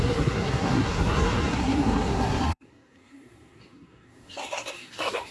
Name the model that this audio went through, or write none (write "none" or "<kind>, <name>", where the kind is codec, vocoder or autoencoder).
codec, SNAC